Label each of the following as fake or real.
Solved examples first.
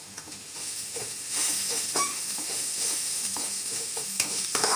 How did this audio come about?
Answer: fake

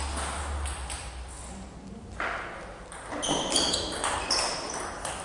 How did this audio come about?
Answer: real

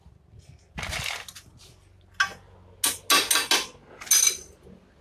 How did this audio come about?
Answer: real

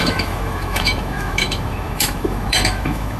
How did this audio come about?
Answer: fake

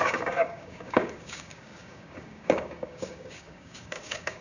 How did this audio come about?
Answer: fake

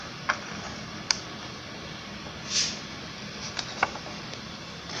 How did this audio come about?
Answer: real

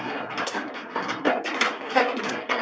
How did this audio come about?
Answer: fake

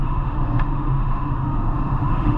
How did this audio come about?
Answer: fake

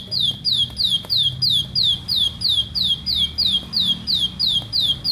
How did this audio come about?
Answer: real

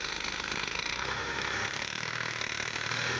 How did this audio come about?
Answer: fake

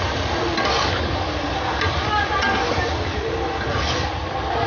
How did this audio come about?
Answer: real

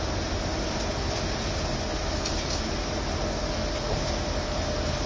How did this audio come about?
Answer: real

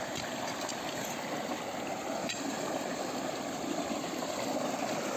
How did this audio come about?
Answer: real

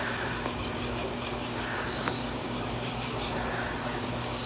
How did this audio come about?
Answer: fake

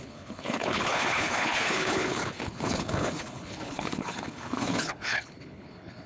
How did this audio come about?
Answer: fake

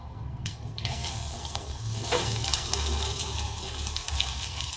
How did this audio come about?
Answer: fake